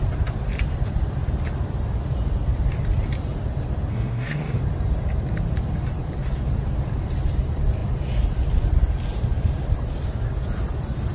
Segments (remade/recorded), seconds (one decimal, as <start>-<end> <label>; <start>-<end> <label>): 0.0-3.9 recorded; 3.9-4.6 remade; 4.6-11.1 recorded